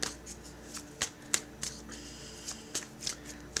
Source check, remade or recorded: recorded